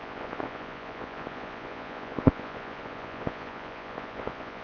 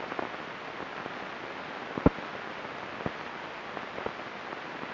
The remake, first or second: first